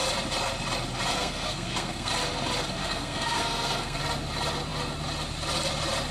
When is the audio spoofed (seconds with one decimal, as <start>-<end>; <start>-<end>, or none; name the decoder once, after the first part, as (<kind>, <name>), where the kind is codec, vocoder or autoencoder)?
1.1-2.1 (codec, SNAC); 2.8-4.0